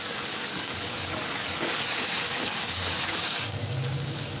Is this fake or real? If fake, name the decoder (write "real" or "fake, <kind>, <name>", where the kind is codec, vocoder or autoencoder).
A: fake, codec, DAC